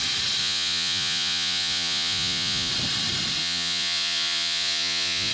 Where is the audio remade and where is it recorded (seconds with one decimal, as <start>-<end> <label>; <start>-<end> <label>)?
0.0-0.4 recorded; 0.4-2.7 remade; 2.7-3.4 recorded; 3.4-5.3 remade